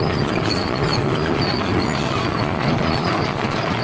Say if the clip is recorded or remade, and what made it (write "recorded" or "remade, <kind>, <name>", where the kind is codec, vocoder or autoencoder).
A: remade, vocoder, Vocos